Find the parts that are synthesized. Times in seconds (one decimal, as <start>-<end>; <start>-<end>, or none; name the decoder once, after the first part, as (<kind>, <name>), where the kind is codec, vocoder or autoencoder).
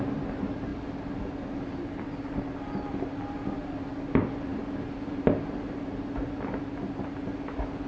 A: none